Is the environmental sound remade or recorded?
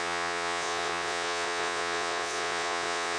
remade